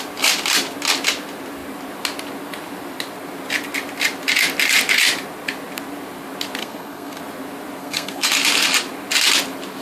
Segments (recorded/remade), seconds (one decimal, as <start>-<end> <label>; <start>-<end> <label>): 0.0-6.6 recorded; 6.6-7.2 remade; 7.2-7.8 recorded; 7.8-8.3 remade; 8.3-9.8 recorded